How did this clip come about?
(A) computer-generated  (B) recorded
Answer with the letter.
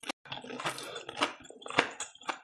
B